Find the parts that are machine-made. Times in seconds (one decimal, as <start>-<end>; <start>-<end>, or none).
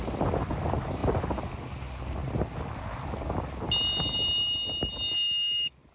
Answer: none